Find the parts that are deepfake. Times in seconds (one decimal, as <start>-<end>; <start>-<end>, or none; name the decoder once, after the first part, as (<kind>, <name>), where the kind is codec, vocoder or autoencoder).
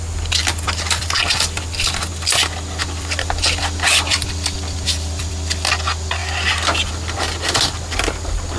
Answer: 0.4-2.1 (vocoder, BigVGAN v2); 2.8-5.3